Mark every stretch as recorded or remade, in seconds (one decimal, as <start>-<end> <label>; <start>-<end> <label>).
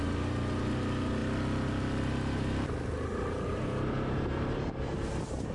0.0-5.5 recorded